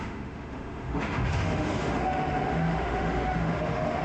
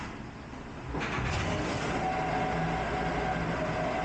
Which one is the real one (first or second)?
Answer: second